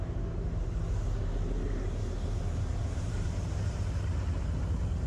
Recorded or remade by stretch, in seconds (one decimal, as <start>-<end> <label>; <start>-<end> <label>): 0.0-2.7 recorded; 2.7-3.3 remade; 3.3-5.1 recorded